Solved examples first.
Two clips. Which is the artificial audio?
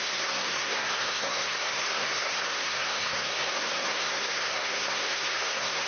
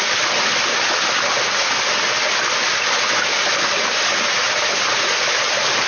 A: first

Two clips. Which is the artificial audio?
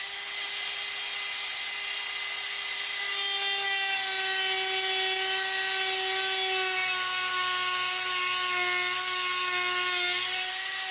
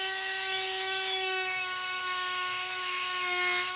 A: second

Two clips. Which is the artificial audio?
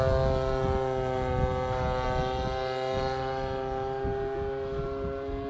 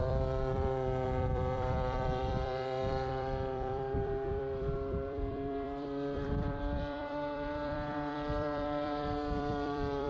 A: second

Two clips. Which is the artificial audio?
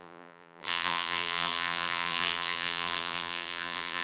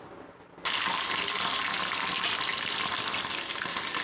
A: first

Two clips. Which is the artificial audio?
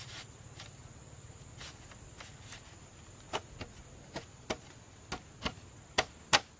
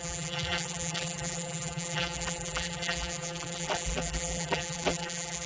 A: second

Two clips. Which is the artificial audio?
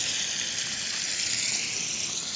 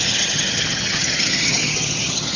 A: second